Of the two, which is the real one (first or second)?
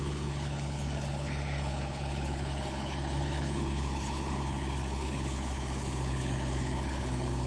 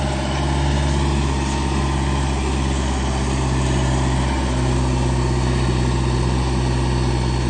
second